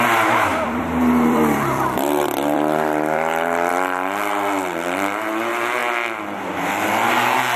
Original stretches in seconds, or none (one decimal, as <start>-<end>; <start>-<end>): 0.0-0.5; 3.7-7.6